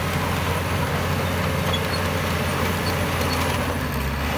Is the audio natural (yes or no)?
yes